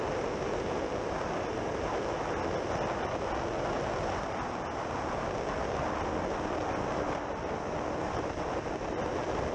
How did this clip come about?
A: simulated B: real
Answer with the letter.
B